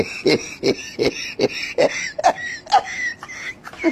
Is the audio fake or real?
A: real